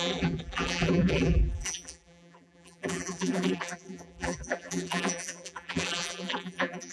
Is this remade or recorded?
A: remade